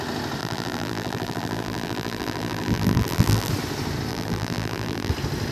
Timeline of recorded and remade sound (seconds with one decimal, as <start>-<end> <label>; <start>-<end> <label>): 0.0-0.4 recorded; 0.4-3.5 remade; 3.5-4.1 recorded; 4.1-5.1 remade; 5.1-5.5 recorded